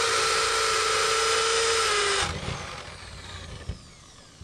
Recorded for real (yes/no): yes